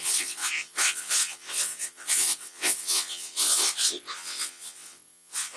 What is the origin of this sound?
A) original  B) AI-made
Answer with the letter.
B